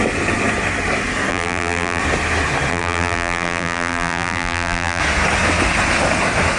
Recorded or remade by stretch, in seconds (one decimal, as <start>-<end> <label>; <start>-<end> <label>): 0.0-1.3 recorded; 1.3-2.0 remade; 2.0-2.7 recorded; 2.7-5.0 remade; 5.0-6.6 recorded

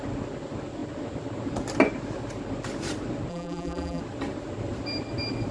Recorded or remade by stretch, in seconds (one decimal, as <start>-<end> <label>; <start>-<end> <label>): 0.0-3.3 recorded; 3.3-4.0 remade; 4.0-5.5 recorded

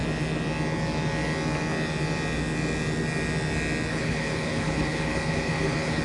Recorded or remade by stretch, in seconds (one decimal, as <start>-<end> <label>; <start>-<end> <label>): 0.0-3.9 recorded; 3.9-6.0 remade

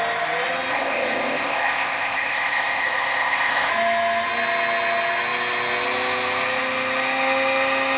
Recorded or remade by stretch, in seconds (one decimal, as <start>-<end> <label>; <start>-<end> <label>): 0.0-0.7 recorded; 0.7-3.7 remade; 3.7-8.0 recorded

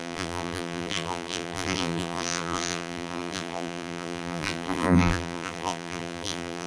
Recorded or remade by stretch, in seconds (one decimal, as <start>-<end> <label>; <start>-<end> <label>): 0.0-6.7 remade

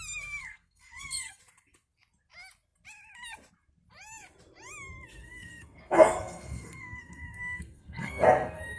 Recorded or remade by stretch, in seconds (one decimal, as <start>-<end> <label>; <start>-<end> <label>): 0.0-0.4 recorded; 0.4-1.4 remade; 1.4-5.2 recorded; 5.2-8.8 remade

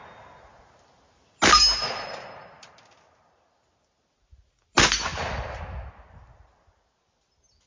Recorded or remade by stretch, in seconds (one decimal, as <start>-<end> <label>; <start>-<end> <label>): 0.0-7.7 recorded

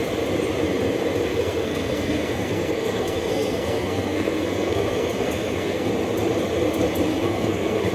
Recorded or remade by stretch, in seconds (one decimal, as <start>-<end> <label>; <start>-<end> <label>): 0.0-1.3 recorded; 1.3-5.9 remade; 5.9-7.1 recorded; 7.1-7.9 remade